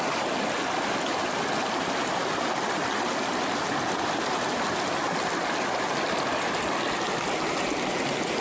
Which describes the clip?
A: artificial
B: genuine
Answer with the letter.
B